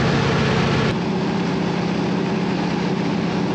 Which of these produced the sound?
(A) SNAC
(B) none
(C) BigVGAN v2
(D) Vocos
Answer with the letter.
B